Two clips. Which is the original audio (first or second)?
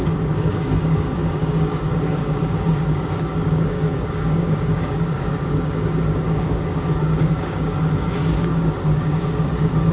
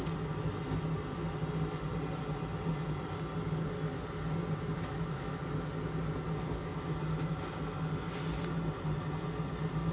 second